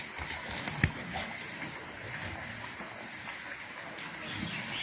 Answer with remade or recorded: recorded